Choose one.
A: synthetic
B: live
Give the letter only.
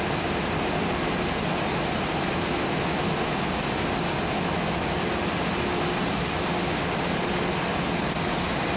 B